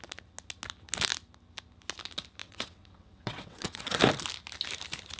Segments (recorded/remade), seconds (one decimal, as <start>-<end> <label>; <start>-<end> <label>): 0.0-2.4 recorded; 2.4-4.0 remade; 4.0-5.2 recorded